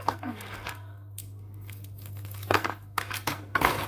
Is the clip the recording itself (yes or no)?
no